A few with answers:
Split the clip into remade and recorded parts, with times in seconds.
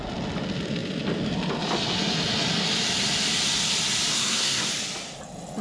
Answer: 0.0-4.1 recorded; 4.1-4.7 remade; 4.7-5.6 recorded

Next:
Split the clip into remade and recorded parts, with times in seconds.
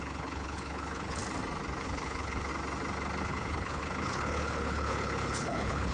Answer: 0.0-1.2 remade; 1.2-1.8 recorded; 1.8-2.5 remade; 2.5-3.2 recorded; 3.2-5.9 remade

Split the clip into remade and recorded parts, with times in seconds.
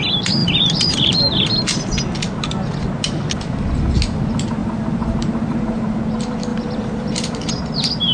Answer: 0.0-0.4 recorded; 0.4-1.6 remade; 1.6-4.6 recorded; 4.6-6.0 remade; 6.0-6.5 recorded; 6.5-7.5 remade; 7.5-8.1 recorded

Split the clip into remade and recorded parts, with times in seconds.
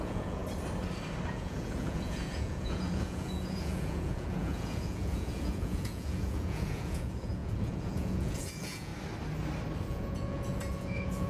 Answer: 0.0-0.4 remade; 0.4-1.3 recorded; 1.3-8.9 remade; 8.9-9.9 recorded; 9.9-11.3 remade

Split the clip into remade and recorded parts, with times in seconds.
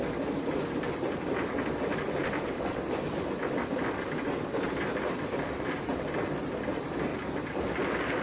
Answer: 0.0-8.2 recorded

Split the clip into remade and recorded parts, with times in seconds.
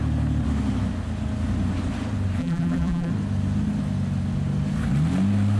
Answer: 0.0-2.4 recorded; 2.4-3.1 remade; 3.1-5.6 recorded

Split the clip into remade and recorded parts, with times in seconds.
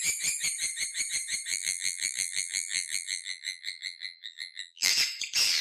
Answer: 0.0-1.5 recorded; 1.5-4.9 remade; 4.9-5.6 recorded